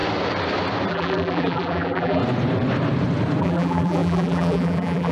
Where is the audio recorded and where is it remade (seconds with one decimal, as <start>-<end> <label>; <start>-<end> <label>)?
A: 0.0-0.9 recorded; 0.9-2.2 remade; 2.2-3.4 recorded; 3.4-5.1 remade